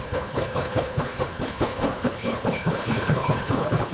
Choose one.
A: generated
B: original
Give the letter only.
A